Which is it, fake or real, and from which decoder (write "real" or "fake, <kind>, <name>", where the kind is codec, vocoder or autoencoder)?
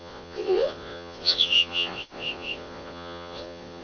fake, vocoder, Vocos